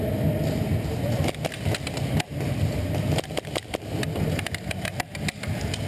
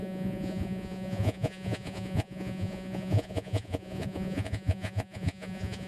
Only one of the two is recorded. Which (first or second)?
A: first